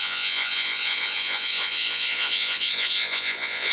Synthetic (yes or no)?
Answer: yes